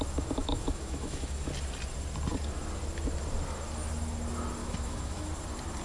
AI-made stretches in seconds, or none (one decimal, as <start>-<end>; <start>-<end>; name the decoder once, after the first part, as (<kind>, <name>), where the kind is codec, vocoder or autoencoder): 0.4-1.5 (autoencoder, DAC-VAE); 4.6-5.3